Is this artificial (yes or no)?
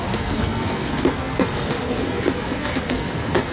yes